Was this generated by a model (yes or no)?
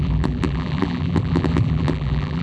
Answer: yes